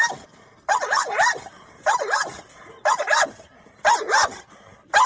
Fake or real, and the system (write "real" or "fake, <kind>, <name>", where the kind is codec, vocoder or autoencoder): real